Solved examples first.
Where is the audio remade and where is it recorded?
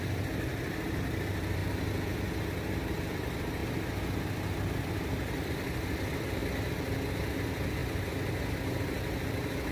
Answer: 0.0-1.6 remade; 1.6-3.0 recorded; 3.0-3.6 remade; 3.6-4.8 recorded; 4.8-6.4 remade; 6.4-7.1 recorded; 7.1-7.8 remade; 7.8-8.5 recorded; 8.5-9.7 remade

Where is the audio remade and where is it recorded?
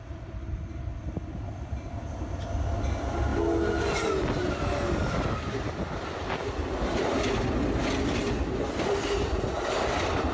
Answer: 0.0-10.3 recorded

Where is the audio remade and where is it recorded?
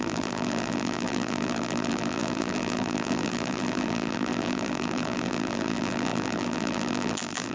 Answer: 0.0-7.5 remade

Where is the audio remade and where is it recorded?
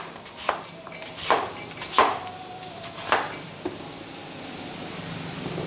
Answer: 0.0-2.0 recorded; 2.0-3.5 remade; 3.5-5.7 recorded